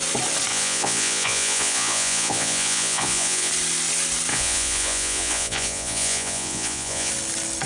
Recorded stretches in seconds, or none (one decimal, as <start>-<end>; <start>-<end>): 0.0-0.5; 3.5-4.3; 7.1-7.7